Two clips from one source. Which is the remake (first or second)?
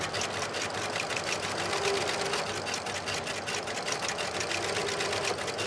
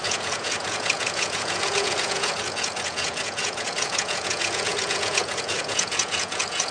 second